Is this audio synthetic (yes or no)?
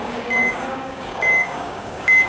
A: yes